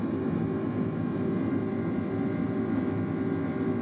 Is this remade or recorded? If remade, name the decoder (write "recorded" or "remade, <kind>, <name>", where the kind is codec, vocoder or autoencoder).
recorded